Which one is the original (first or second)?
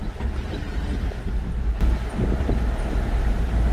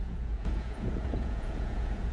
first